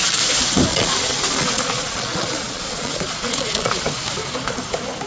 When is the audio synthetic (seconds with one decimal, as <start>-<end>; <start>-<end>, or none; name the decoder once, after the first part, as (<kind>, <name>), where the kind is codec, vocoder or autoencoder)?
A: 0.7-3.8 (vocoder, Vocos)